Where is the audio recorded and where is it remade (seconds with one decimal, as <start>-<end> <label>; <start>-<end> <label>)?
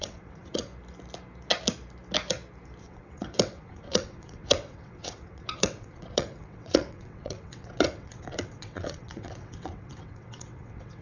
0.0-0.7 remade; 0.7-2.8 recorded; 2.8-11.0 remade